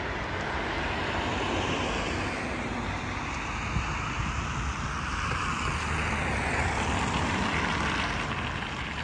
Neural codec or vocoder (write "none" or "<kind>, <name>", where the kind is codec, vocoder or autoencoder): none